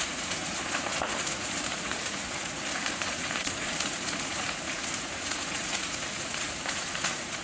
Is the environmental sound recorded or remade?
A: remade